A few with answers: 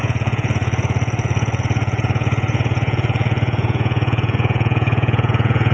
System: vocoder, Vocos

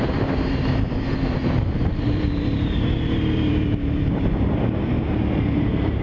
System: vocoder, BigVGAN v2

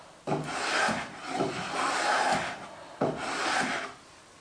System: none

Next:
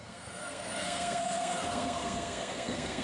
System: codec, SNAC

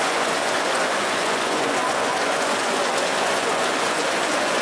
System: vocoder, Vocos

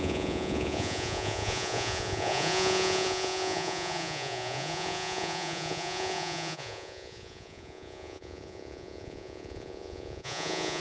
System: vocoder, Vocos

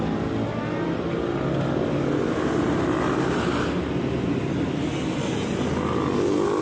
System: none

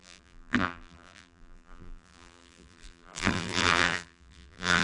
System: vocoder, BigVGAN v2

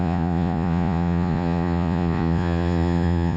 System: vocoder, Vocos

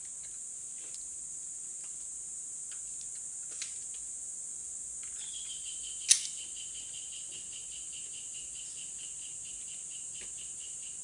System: none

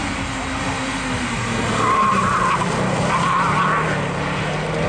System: none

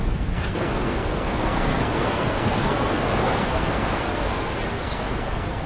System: codec, SNAC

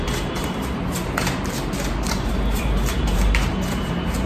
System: vocoder, BigVGAN v2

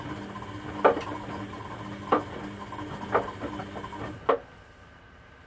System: none